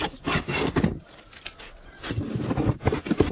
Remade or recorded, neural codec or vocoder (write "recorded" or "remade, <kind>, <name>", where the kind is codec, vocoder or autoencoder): recorded